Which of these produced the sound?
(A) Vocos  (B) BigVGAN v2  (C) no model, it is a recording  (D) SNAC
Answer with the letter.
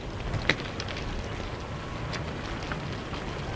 C